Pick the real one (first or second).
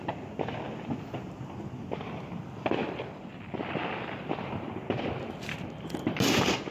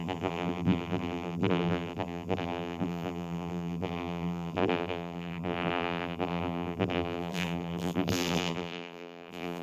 first